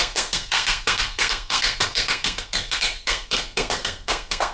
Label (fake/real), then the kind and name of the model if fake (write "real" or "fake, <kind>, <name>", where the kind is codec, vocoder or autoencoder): fake, codec, SNAC